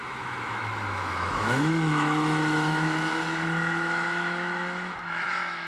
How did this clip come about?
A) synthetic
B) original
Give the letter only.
A